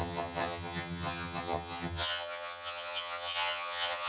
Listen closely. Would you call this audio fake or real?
fake